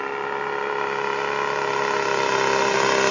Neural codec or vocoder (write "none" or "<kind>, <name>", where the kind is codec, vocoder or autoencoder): none